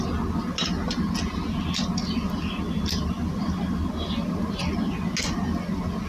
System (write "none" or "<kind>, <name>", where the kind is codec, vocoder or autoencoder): none